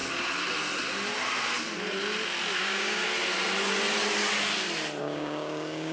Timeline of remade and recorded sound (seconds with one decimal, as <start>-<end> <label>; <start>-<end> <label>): 0.0-2.6 recorded; 2.6-3.0 remade; 3.0-5.0 recorded; 5.0-5.9 remade